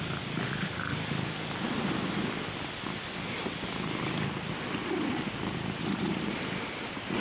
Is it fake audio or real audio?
real